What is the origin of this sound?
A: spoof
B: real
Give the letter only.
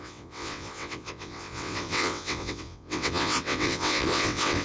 A